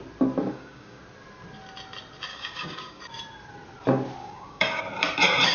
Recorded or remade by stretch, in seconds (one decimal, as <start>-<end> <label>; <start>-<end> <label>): 0.0-0.5 recorded; 0.5-1.0 remade; 1.0-2.3 recorded; 2.3-3.0 remade; 3.0-4.2 recorded; 4.2-4.8 remade; 4.8-5.5 recorded